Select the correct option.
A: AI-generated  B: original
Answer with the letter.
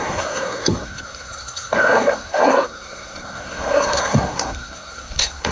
A